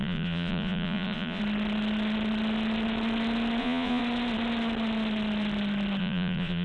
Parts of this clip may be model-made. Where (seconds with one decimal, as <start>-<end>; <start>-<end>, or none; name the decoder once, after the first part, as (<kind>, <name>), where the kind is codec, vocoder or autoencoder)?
0.0-1.4 (vocoder, Vocos); 3.6-4.0; 6.0-6.6